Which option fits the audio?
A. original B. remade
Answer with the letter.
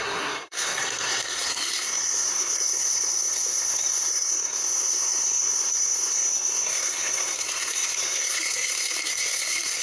B